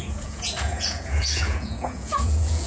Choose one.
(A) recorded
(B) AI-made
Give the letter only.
B